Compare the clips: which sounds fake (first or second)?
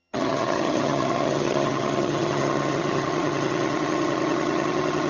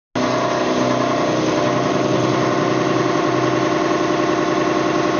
first